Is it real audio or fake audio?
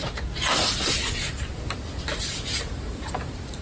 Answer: real